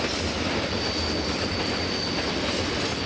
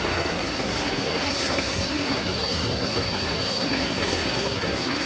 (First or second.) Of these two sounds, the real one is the first